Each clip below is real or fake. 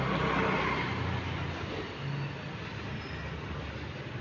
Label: real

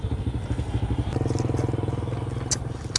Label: real